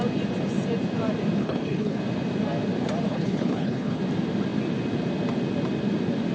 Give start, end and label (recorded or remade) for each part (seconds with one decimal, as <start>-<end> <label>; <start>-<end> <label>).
0.0-1.4 recorded; 1.4-2.0 remade; 2.0-3.1 recorded; 3.1-4.0 remade; 4.0-6.3 recorded